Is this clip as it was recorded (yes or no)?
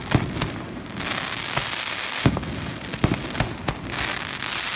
yes